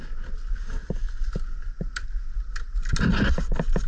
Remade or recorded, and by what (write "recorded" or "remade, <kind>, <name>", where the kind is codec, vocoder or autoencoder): recorded